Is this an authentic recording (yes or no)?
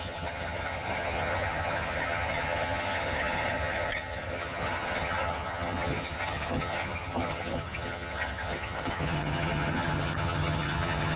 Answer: no